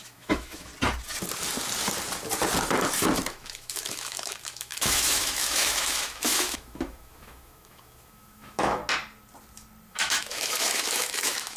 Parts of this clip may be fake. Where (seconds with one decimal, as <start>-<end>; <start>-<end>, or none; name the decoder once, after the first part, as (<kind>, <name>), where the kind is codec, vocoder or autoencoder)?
0.0-0.7 (autoencoder, DAC-VAE); 3.3-8.8; 9.9-11.6